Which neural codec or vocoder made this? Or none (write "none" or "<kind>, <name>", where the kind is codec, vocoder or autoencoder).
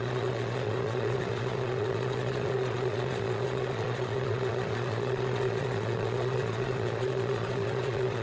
vocoder, Vocos